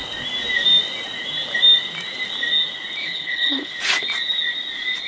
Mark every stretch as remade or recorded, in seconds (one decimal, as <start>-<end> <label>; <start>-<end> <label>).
0.0-3.0 recorded; 3.0-3.7 remade; 3.7-5.1 recorded